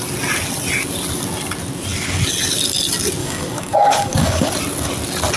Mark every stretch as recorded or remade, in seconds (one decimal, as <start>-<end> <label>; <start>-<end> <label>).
0.0-3.2 recorded; 3.2-4.5 remade; 4.5-5.4 recorded